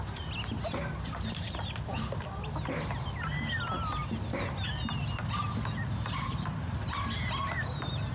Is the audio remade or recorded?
recorded